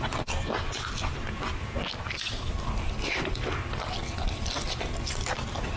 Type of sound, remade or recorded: recorded